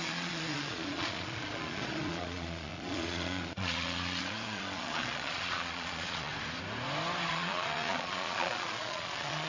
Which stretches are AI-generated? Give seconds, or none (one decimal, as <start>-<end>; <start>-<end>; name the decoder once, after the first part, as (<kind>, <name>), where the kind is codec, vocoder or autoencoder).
0.0-6.3 (vocoder, Vocos); 7.3-9.5